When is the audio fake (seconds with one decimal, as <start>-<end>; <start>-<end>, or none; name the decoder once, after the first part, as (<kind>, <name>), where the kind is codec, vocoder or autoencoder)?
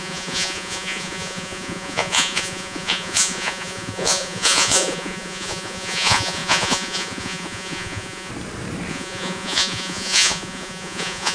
0.0-8.3 (vocoder, Vocos); 8.9-11.3